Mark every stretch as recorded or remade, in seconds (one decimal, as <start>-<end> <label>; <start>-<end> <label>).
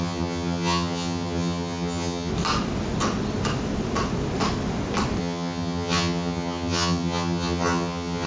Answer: 0.0-2.3 remade; 2.3-5.2 recorded; 5.2-8.3 remade